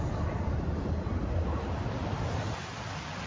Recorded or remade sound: recorded